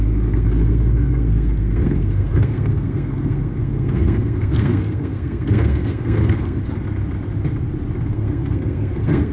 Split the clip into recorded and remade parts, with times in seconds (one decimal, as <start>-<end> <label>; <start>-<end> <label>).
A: 0.0-6.6 remade; 6.6-8.1 recorded; 8.1-9.3 remade